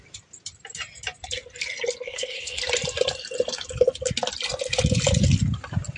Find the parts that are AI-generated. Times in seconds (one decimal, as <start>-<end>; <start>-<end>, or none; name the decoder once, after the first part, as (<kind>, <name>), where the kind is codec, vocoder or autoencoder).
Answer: 2.0-2.6 (codec, HILCodec)